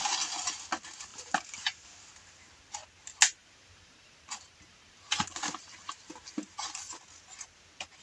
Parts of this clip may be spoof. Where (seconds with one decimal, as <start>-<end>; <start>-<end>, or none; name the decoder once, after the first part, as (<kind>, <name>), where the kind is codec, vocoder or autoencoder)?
1.1-2.5 (vocoder, BigVGAN v2); 3.4-6.0